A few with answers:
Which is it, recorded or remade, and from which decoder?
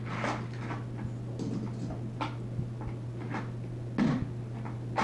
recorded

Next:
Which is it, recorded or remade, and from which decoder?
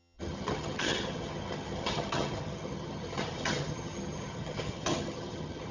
remade, vocoder, HiFi-GAN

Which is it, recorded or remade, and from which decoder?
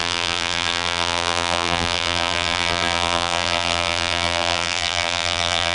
remade, vocoder, BigVGAN v2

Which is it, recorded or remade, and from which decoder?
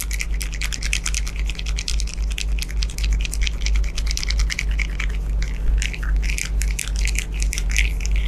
recorded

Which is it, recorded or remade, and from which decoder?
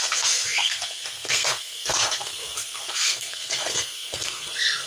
remade, codec, SNAC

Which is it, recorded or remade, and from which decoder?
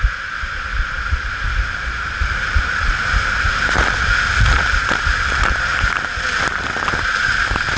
recorded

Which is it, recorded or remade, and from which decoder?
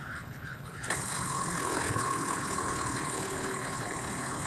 remade, codec, HILCodec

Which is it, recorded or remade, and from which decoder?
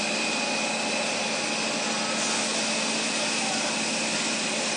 recorded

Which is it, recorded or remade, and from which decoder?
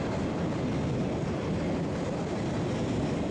recorded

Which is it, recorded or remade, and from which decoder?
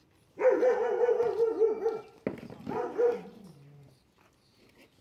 recorded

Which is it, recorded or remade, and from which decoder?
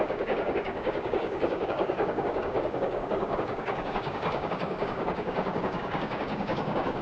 remade, codec, DAC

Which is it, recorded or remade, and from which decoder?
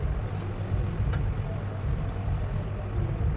recorded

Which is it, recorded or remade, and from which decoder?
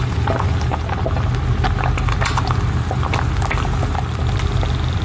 recorded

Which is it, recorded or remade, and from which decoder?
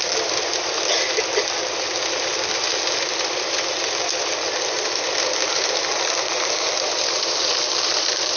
recorded